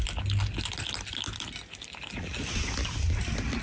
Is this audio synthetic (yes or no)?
no